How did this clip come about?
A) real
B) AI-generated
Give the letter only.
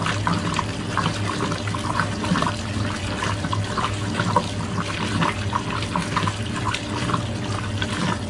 A